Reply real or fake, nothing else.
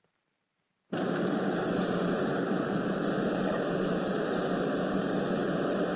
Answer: fake